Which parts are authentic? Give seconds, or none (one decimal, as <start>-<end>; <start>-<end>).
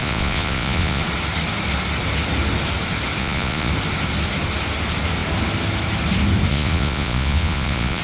1.0-3.2; 3.7-6.5